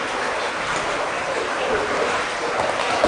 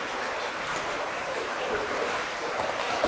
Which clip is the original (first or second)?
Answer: first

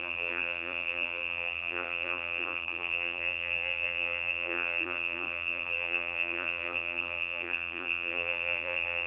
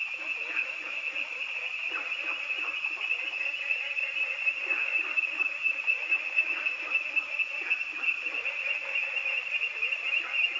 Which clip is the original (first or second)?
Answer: second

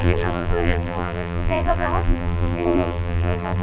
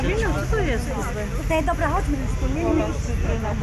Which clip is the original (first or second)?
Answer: second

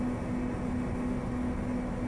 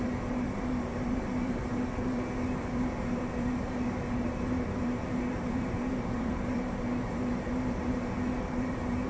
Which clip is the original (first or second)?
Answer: first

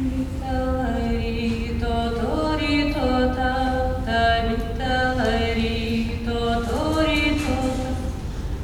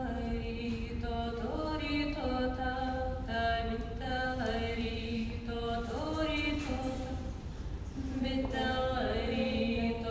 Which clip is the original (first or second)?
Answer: first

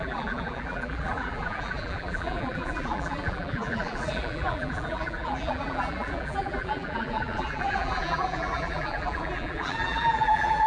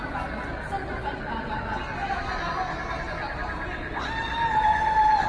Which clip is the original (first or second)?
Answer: second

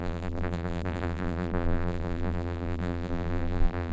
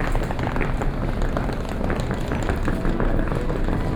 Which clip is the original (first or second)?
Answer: second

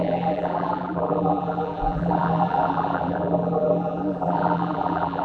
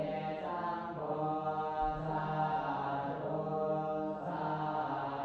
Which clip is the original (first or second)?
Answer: second